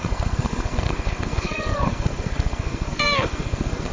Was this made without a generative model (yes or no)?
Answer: no